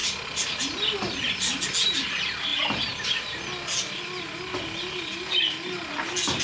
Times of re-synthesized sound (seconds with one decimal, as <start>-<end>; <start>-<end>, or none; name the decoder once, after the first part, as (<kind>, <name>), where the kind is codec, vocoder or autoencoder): none